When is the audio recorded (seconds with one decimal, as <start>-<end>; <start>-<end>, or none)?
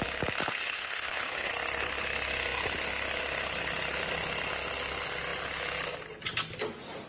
0.0-0.4; 1.5-7.1